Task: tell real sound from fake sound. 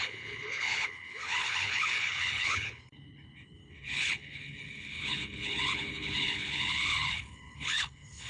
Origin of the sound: fake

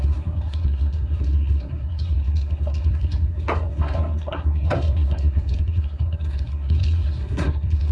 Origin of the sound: fake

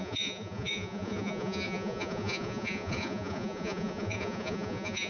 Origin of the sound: fake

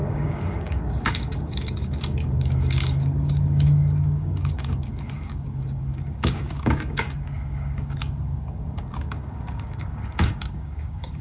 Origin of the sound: fake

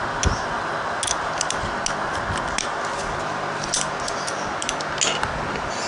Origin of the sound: real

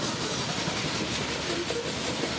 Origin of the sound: real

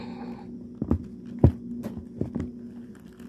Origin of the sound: real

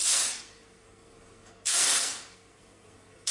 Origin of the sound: fake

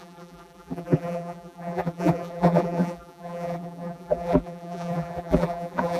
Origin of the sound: fake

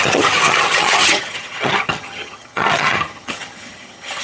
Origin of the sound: fake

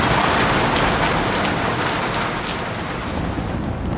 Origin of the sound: real